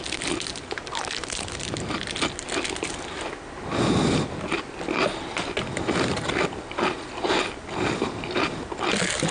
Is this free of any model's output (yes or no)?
yes